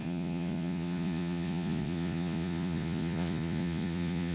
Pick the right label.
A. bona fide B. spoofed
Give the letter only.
B